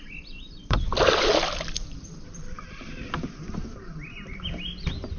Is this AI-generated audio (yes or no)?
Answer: yes